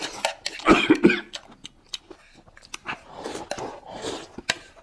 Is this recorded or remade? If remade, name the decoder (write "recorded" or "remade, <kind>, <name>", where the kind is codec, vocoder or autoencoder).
recorded